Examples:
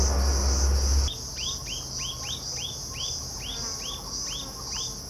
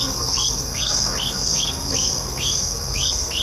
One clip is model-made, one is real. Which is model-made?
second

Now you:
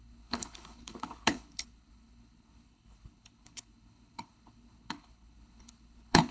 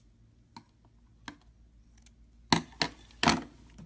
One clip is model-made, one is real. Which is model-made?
first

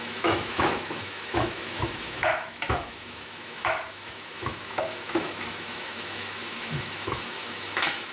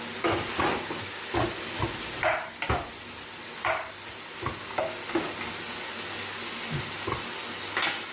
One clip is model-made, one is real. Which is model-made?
first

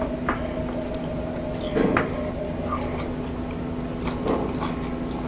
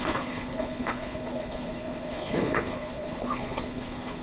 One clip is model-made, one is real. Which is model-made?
second